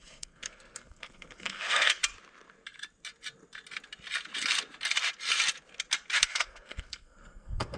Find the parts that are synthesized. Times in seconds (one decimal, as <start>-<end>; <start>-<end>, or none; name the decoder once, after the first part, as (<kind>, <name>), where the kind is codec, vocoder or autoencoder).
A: 0.0-2.0 (codec, SNAC); 6.2-7.8